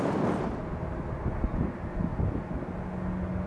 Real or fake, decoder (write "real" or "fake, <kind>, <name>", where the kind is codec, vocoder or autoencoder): real